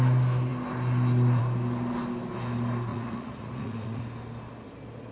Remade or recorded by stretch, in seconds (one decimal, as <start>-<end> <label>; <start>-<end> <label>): 0.0-2.9 recorded; 2.9-4.0 remade; 4.0-5.1 recorded